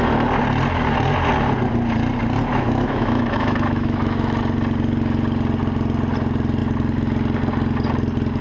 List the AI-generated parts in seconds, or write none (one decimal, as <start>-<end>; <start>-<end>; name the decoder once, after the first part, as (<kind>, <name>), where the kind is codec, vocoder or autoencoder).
2.5-4.4 (autoencoder, DAC-VAE)